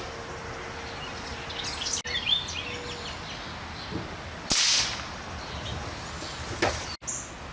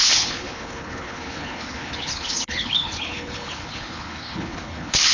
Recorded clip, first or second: first